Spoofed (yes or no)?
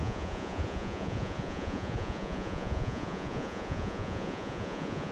yes